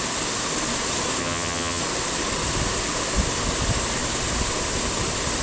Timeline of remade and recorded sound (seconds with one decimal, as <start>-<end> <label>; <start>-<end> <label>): 0.0-1.2 recorded; 1.2-1.8 remade; 1.8-5.4 recorded